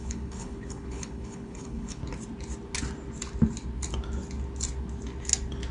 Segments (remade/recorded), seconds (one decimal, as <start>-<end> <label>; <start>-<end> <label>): 0.0-2.0 remade; 2.0-5.7 recorded

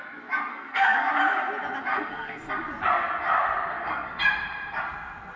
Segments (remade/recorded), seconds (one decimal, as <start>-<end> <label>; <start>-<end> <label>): 0.0-0.5 recorded; 0.5-1.1 remade; 1.1-1.9 recorded; 1.9-2.5 remade; 2.5-3.7 recorded; 3.7-4.2 remade; 4.2-5.4 recorded

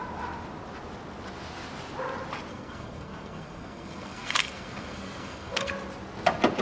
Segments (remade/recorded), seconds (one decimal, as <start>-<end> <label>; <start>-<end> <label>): 0.0-2.5 recorded; 2.5-5.7 remade; 5.7-6.6 recorded

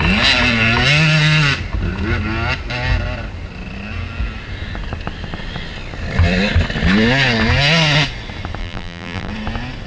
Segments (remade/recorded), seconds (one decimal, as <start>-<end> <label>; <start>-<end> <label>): 0.0-8.6 recorded; 8.6-9.3 remade; 9.3-9.9 recorded